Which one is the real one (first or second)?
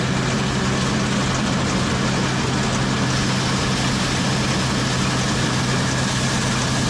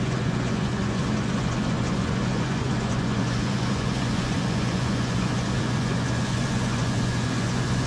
first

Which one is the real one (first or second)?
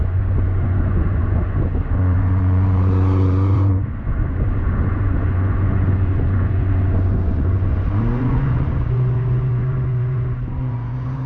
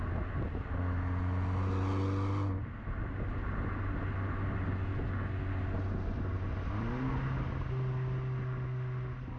second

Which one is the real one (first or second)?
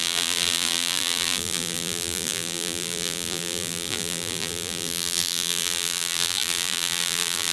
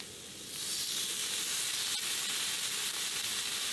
second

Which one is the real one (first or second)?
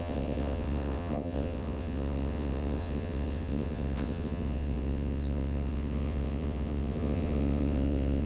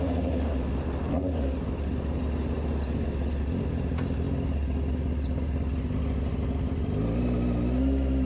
second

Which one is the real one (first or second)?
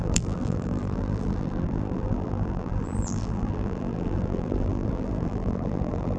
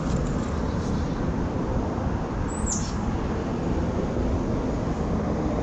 second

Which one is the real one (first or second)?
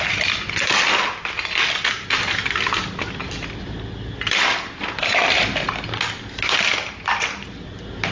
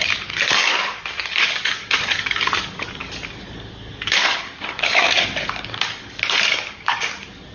first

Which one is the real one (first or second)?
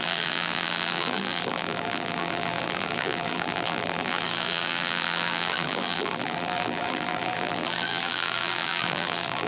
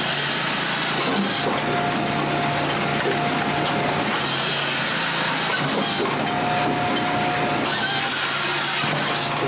second